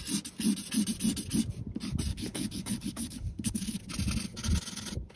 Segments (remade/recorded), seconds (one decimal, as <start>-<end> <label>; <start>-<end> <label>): 0.0-2.1 recorded; 2.1-3.8 remade; 3.8-5.2 recorded